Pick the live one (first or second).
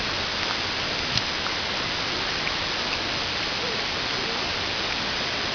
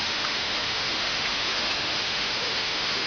first